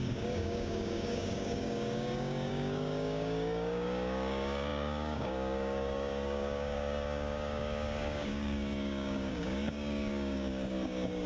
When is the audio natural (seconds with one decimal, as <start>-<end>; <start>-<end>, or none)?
none

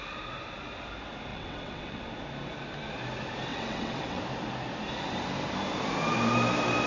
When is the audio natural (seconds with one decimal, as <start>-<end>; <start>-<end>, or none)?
0.0-1.3; 2.1-3.5; 4.2-6.9

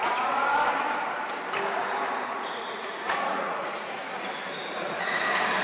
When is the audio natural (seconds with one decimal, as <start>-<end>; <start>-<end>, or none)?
0.4-2.2; 4.0-4.8

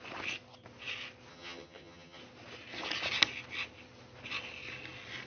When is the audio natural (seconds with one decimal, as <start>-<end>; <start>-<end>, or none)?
0.0-1.3; 2.2-5.3

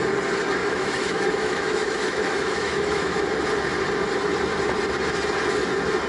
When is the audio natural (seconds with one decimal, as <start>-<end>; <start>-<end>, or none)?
0.0-0.6; 3.2-6.1

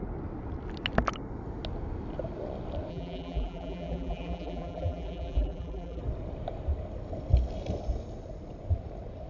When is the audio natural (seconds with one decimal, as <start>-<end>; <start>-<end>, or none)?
0.0-2.9; 6.0-9.3

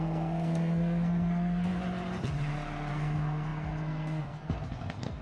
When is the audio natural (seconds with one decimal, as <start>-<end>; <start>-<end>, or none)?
1.7-2.9

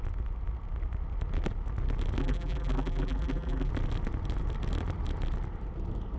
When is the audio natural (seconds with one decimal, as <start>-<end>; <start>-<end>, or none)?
0.0-2.2; 3.7-6.2